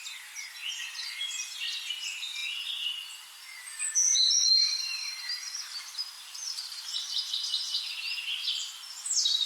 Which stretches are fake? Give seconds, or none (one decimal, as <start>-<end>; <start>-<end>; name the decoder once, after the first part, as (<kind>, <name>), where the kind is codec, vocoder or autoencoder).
4.0-7.3 (vocoder, BigVGAN v2)